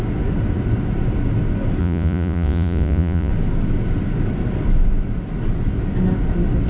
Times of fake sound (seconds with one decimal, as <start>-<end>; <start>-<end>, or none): 1.8-3.3